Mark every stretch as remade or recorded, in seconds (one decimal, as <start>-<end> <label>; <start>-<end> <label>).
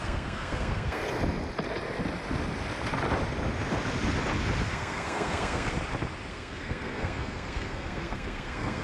0.0-1.0 remade; 1.0-4.6 recorded; 4.6-5.7 remade; 5.7-6.3 recorded; 6.3-8.8 remade